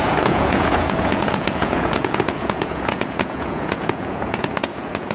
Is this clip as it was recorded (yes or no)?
no